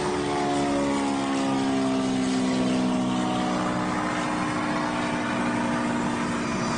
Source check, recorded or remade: recorded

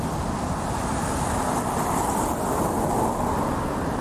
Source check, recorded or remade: recorded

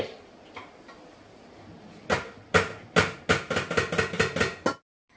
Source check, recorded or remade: recorded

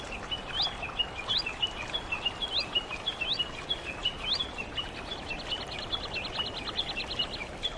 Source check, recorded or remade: recorded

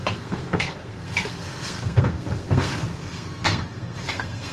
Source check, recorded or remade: remade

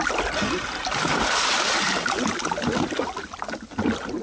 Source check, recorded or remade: recorded